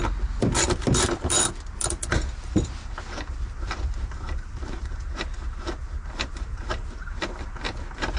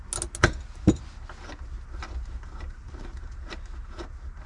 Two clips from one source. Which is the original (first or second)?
second